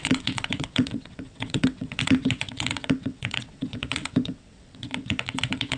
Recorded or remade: remade